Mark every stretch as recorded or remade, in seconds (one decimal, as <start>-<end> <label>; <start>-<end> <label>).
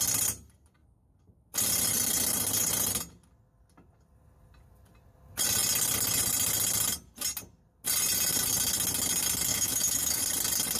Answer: 0.0-9.5 recorded; 9.5-10.2 remade; 10.2-10.8 recorded